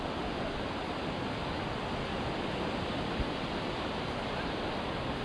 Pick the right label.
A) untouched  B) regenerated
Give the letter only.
A